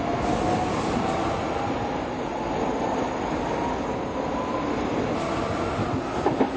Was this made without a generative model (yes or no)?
yes